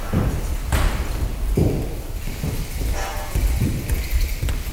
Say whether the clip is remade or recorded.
remade